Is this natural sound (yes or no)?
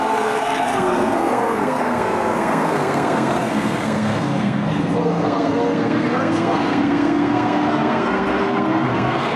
no